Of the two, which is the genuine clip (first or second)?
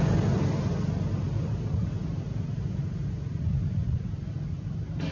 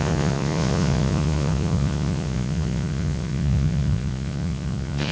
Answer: first